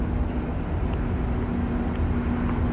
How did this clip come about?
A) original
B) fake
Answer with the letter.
A